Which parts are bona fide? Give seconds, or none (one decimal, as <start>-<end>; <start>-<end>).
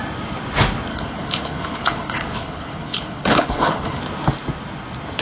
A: 0.0-0.9; 4.0-5.2